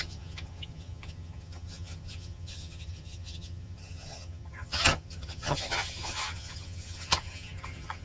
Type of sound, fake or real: fake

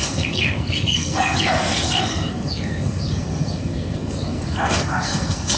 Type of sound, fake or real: fake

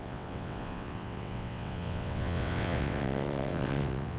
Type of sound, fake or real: fake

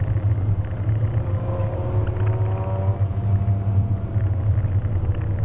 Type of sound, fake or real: real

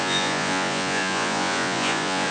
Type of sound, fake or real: fake